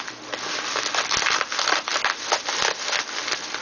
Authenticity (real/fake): real